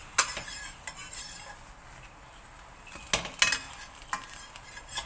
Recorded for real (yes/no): yes